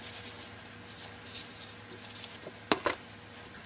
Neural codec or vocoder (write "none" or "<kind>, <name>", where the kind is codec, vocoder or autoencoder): none